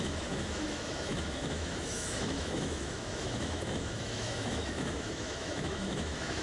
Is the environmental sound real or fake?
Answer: fake